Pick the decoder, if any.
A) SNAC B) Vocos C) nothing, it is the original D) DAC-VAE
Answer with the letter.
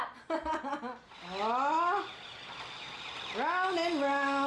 C